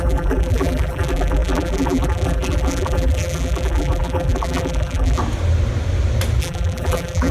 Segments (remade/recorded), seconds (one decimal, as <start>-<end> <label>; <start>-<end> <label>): 0.0-5.2 remade; 5.2-6.4 recorded; 6.4-7.3 remade